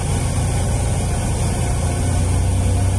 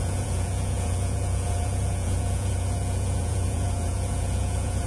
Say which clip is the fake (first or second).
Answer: second